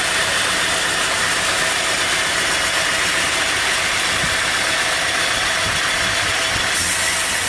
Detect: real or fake real